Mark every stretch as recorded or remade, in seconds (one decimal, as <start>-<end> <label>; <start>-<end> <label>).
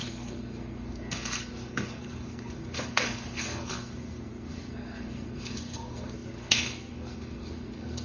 0.0-8.0 remade